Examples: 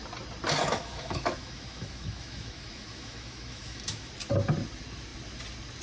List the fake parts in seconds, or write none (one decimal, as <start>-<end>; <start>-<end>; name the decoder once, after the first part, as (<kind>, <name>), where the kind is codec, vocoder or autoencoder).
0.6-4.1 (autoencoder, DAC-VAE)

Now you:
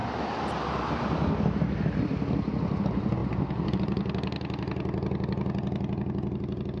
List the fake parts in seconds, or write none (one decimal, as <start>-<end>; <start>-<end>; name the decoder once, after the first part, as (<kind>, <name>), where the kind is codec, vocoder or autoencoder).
none

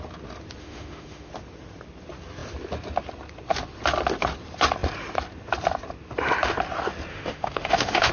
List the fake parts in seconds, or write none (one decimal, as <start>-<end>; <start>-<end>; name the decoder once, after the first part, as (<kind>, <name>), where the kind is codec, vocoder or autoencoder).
0.6-1.3 (autoencoder, DAC-VAE); 7.1-8.1

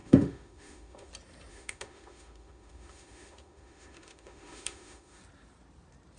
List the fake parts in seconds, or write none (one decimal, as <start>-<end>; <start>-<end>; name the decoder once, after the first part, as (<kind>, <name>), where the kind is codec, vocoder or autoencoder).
0.0-1.1 (autoencoder, DAC-VAE); 1.5-5.2

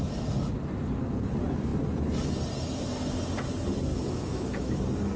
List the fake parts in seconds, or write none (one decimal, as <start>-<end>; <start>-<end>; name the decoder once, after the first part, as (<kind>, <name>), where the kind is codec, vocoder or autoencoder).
3.9-4.8 (autoencoder, DAC-VAE)

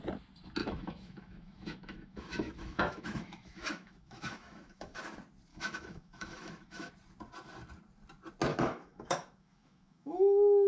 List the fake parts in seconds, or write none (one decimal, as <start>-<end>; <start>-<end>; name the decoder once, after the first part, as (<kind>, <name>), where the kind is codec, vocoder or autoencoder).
0.6-5.0 (autoencoder, DAC-VAE); 5.5-6.9; 8.5-10.7